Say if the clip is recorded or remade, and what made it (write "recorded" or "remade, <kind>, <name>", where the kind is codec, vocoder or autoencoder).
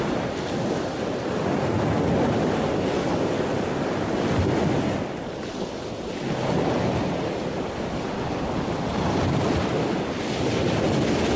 recorded